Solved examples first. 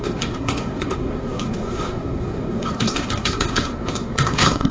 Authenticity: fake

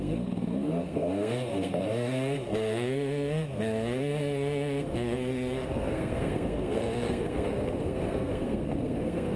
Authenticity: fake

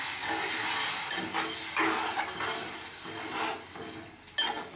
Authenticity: real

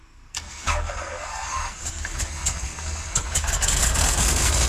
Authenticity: fake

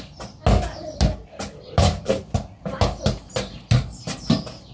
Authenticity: real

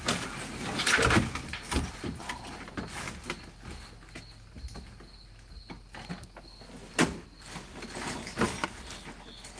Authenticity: real